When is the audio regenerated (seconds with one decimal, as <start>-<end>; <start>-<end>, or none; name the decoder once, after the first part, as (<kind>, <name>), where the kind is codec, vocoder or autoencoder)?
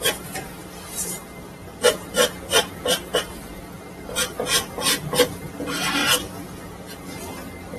0.6-1.2 (vocoder, BigVGAN v2)